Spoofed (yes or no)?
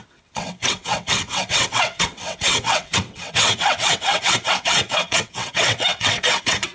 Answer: yes